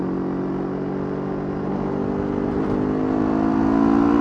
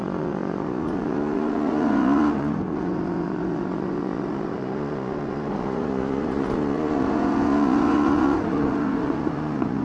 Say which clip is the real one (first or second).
first